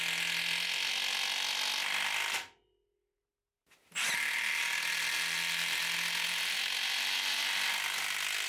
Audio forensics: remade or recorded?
recorded